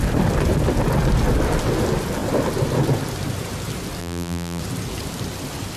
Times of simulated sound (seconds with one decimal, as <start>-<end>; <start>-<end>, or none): 4.0-4.6